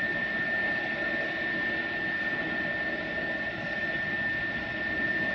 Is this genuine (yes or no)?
yes